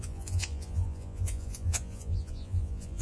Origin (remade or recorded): remade